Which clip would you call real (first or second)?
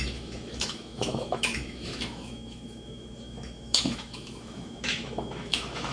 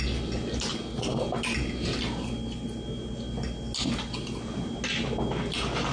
second